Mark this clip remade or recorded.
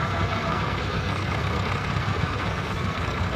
remade